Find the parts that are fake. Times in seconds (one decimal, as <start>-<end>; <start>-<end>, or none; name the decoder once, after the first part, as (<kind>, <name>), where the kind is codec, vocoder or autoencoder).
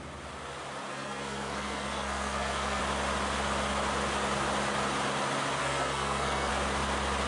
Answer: 0.9-2.8 (codec, SNAC); 5.6-6.5